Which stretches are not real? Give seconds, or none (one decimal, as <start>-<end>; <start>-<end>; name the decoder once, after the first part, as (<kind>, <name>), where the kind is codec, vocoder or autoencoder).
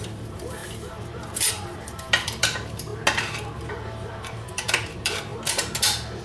0.0-0.6 (vocoder, BigVGAN v2); 1.5-2.9; 3.7-5.3